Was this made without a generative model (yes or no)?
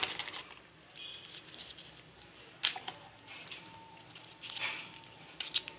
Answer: yes